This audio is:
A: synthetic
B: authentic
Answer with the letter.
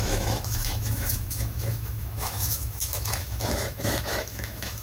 A